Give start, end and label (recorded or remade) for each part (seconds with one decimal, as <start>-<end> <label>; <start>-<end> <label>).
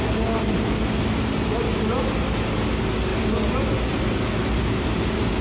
0.0-5.4 recorded